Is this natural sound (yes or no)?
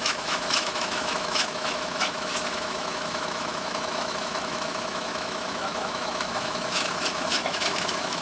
no